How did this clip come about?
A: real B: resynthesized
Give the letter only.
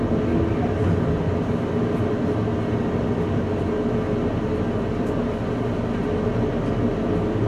A